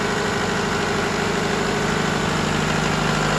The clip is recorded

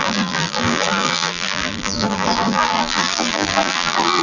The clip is remade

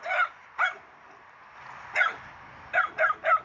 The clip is recorded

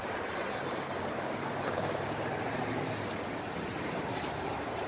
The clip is remade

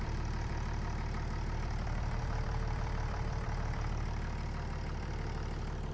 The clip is remade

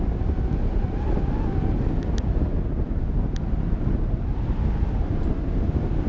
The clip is recorded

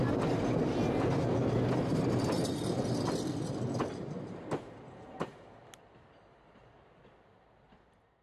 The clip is recorded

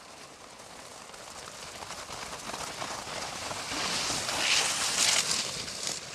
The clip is recorded